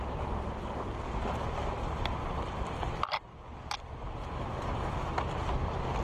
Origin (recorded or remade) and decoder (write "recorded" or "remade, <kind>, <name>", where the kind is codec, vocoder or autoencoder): recorded